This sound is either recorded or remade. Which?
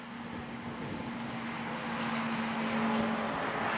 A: recorded